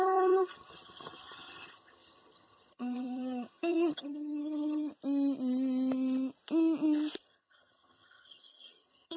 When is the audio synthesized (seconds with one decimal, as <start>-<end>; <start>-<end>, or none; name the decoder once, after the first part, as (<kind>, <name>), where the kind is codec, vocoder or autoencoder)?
0.0-4.9 (vocoder, HiFi-GAN); 7.2-9.2